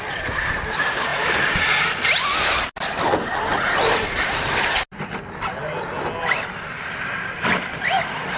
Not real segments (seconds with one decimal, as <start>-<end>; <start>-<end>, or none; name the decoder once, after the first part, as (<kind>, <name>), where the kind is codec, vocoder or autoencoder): none